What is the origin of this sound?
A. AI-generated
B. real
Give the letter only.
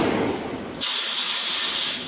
B